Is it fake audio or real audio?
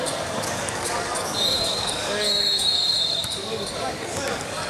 fake